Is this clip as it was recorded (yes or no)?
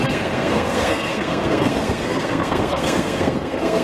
no